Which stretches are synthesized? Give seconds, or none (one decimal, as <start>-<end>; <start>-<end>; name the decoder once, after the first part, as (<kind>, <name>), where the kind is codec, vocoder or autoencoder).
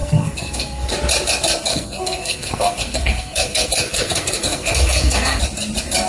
0.0-0.9 (codec, SNAC); 1.7-5.4